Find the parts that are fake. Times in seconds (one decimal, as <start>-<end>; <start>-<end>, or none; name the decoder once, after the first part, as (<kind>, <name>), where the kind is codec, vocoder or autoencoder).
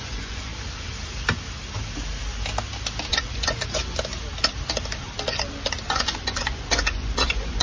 0.0-0.5 (vocoder, Vocos); 3.1-3.8; 5.9-7.6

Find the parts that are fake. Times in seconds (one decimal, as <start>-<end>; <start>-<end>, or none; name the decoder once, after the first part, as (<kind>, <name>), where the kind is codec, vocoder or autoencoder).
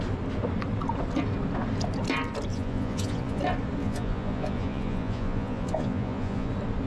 2.5-3.4 (vocoder, Vocos); 3.8-6.5